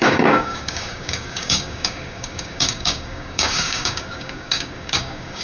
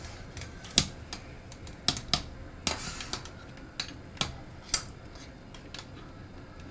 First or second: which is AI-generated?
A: first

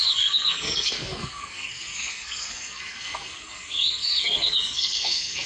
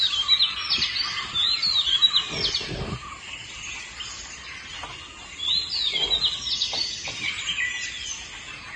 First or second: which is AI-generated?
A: first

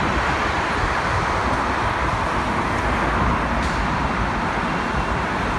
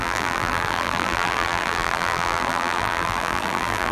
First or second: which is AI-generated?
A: second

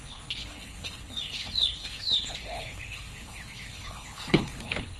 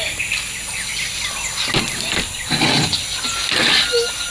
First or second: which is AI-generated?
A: first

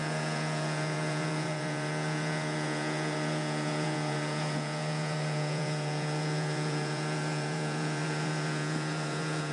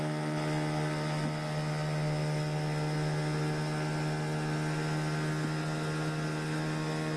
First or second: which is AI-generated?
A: first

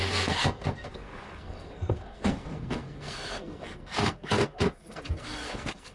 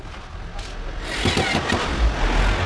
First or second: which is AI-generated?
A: first